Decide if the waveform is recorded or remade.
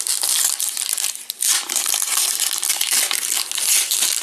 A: recorded